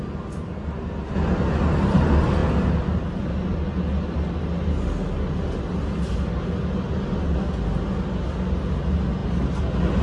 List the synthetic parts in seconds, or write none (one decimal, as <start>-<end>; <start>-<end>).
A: none